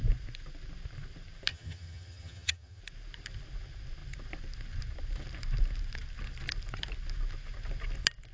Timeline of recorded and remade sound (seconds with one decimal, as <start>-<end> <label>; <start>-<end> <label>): 0.0-1.5 recorded; 1.5-2.8 remade; 2.8-8.3 recorded